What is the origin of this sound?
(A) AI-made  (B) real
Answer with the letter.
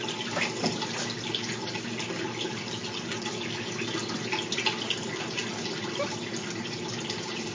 B